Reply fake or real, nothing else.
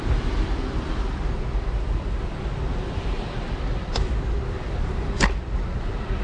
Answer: real